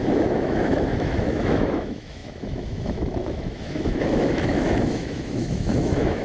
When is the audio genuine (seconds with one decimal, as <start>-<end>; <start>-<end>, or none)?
none